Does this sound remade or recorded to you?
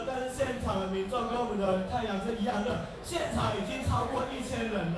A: remade